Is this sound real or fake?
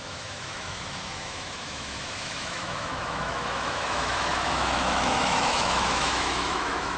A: fake